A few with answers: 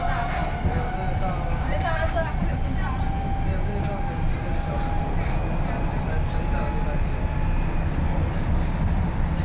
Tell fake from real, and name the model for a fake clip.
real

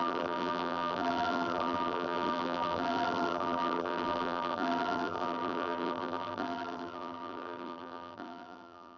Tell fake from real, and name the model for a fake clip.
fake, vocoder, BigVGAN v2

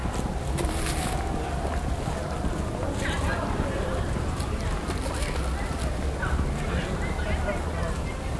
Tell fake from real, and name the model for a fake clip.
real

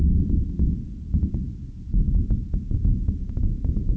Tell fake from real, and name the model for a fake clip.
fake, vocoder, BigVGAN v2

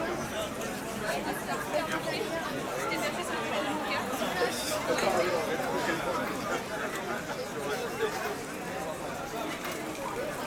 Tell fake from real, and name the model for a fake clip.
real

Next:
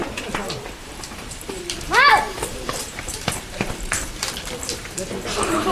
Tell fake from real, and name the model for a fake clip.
fake, vocoder, BigVGAN v2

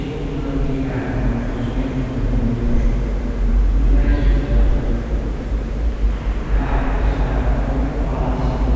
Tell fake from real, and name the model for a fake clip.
fake, vocoder, BigVGAN v2